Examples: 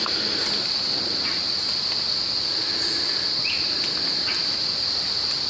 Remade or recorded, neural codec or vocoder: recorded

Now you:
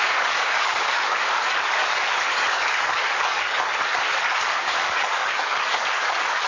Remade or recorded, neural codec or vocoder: remade, codec, DAC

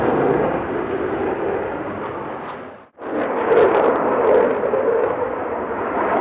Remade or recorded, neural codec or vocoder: recorded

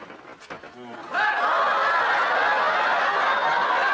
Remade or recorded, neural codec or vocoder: recorded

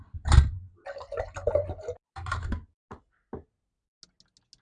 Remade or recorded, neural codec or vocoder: recorded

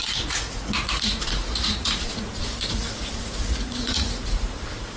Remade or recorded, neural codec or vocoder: remade, vocoder, Vocos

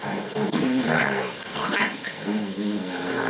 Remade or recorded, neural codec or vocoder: remade, codec, SNAC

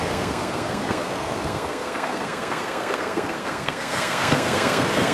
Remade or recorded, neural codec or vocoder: remade, codec, SNAC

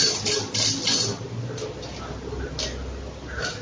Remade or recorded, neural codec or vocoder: recorded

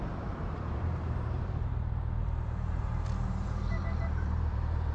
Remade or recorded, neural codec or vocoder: remade, vocoder, BigVGAN v2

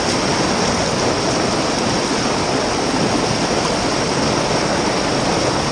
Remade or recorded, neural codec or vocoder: recorded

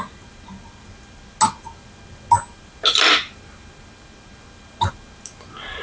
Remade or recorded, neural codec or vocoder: recorded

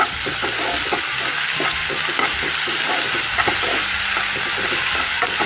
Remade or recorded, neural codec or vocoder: recorded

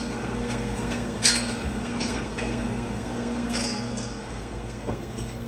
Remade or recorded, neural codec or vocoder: remade, codec, SNAC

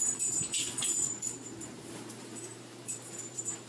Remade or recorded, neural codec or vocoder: remade, vocoder, BigVGAN v2